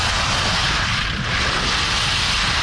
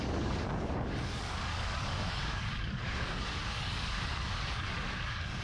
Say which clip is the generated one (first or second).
second